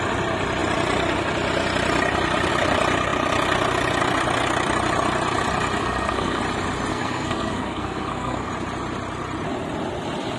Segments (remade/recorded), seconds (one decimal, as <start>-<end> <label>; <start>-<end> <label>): 0.0-5.8 recorded; 5.8-6.4 remade; 6.4-6.9 recorded; 6.9-8.5 remade; 8.5-10.4 recorded